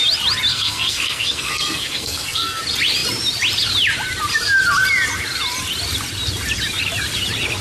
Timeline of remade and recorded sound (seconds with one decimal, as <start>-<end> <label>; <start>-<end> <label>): 0.0-0.5 recorded; 0.5-2.6 remade; 2.6-7.6 recorded